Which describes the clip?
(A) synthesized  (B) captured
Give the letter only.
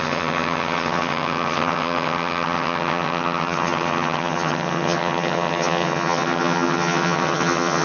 A